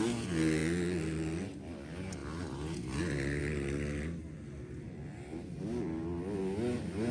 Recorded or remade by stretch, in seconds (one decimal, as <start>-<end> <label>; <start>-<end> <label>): 0.0-7.1 recorded